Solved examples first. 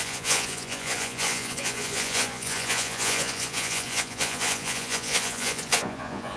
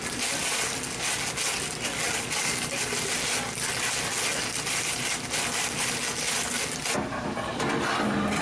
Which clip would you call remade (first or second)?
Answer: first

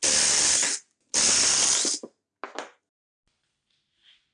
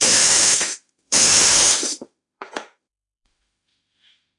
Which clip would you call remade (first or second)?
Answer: second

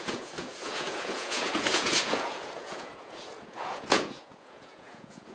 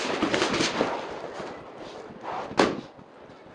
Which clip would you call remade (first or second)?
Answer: first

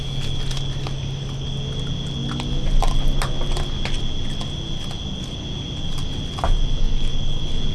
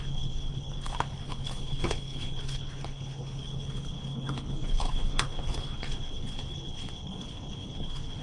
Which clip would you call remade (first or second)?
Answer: second